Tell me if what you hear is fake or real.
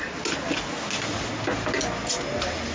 real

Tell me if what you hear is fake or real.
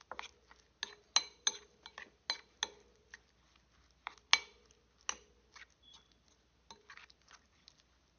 real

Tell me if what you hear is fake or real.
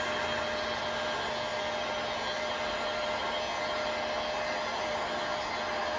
real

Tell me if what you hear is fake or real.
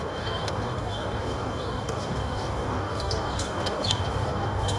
fake